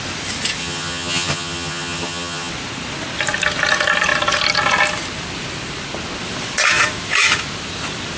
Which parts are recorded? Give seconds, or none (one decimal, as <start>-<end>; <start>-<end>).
0.0-0.6; 2.5-8.2